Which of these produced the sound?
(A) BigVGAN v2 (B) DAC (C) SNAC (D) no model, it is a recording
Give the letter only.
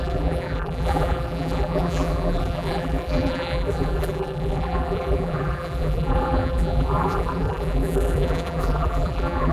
A